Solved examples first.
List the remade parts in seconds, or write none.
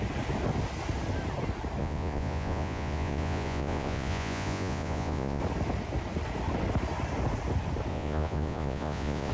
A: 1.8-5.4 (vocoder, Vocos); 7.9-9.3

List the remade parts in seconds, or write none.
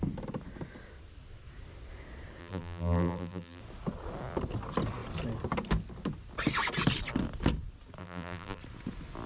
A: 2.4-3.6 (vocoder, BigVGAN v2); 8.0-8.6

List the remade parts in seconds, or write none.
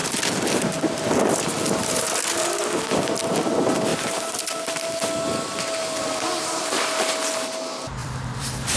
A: 0.0-1.1 (vocoder, BigVGAN v2); 3.9-5.0; 8.0-8.8